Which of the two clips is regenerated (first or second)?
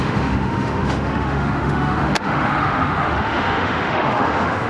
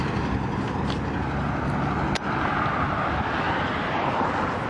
first